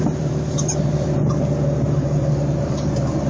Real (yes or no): yes